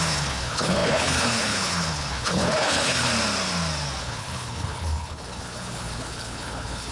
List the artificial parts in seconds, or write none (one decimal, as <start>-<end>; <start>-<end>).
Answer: 0.0-3.1; 4.0-6.9